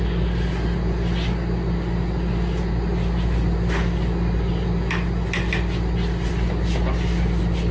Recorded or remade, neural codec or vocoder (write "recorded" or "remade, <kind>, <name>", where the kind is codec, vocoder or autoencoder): recorded